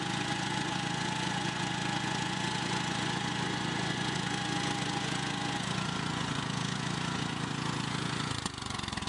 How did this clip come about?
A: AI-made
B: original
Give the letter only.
A